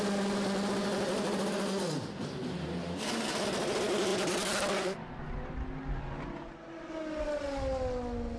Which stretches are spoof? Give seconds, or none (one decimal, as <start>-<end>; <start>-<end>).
none